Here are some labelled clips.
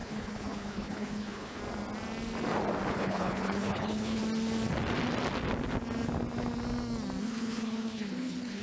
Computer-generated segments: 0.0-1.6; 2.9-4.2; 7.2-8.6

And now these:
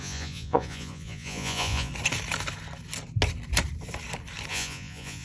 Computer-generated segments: 0.0-1.9; 4.5-5.2